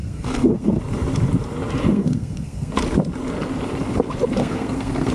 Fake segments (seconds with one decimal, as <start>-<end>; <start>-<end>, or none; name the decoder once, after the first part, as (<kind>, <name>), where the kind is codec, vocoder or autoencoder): 0.0-0.8 (codec, SNAC); 1.9-2.8; 4.4-5.1